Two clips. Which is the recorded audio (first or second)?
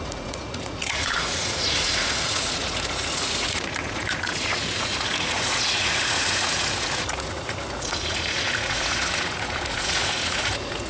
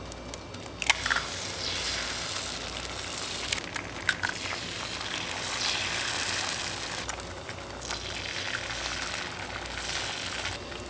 second